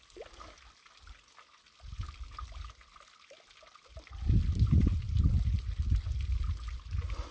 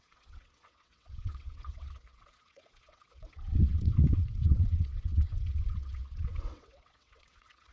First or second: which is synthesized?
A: second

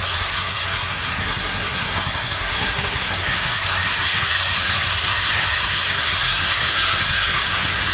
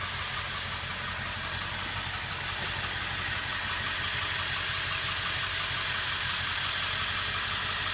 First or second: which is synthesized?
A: first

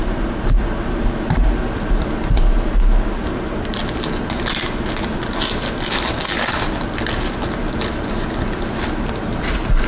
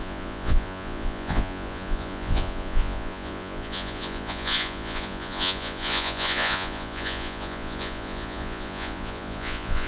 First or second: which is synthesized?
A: second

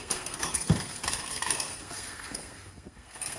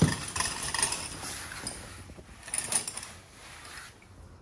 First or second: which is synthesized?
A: first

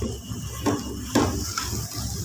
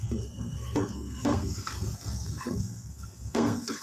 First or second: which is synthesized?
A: second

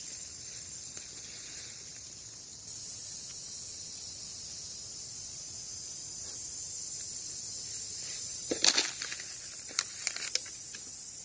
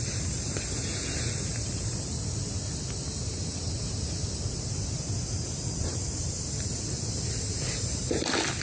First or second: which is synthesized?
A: second